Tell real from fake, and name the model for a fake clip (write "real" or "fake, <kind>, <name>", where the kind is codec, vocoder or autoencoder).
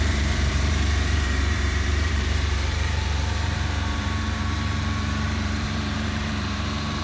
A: fake, vocoder, BigVGAN v2